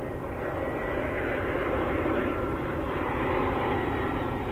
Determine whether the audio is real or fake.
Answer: real